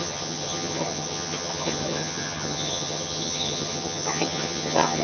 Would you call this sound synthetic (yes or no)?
yes